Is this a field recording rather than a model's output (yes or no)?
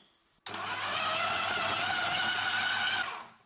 yes